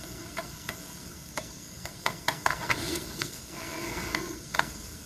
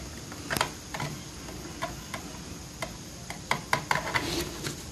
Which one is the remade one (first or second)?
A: first